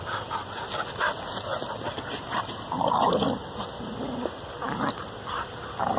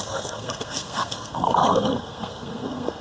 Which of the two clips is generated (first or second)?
second